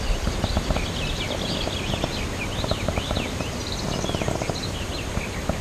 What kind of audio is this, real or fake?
real